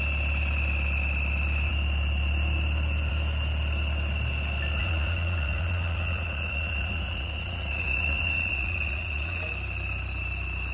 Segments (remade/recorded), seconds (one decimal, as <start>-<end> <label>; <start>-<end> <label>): 0.0-4.8 recorded; 4.8-9.5 remade; 9.5-10.7 recorded